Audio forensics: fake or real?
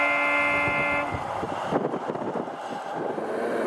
real